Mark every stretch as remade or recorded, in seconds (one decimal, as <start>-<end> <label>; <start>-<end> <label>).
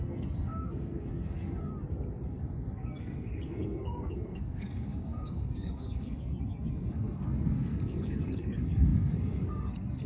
0.0-1.7 remade; 1.7-2.3 recorded; 2.3-10.1 remade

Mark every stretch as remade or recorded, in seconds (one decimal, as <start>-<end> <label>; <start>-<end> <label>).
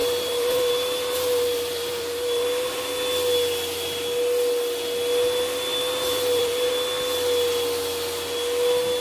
0.0-2.8 remade; 2.8-5.7 recorded; 5.7-6.7 remade; 6.7-9.0 recorded